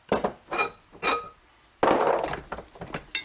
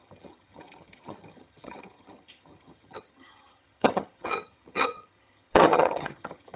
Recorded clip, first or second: first